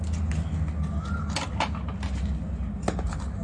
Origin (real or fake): real